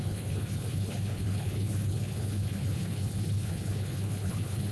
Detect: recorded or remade remade